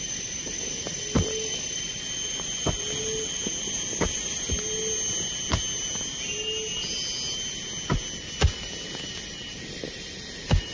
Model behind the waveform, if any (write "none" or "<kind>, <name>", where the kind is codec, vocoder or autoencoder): none